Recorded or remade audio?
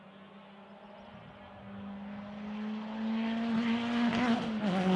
recorded